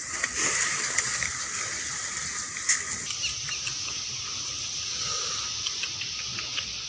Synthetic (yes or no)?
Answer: no